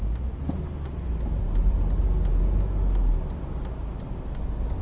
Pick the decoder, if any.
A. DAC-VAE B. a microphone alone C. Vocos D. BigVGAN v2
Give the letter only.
B